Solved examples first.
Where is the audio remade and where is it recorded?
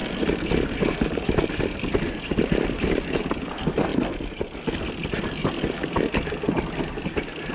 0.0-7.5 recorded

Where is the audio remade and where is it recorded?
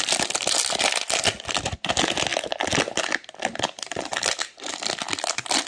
0.0-5.7 recorded